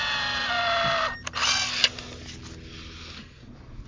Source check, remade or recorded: recorded